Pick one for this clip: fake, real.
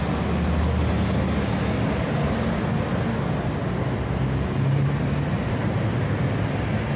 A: real